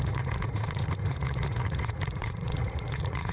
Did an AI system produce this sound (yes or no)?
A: yes